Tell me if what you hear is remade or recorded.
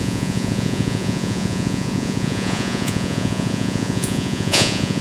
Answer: remade